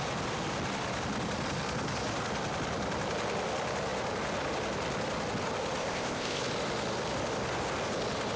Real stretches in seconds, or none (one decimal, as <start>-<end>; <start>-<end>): 0.0-5.8; 6.4-8.4